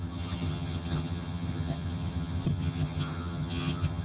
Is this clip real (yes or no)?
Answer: no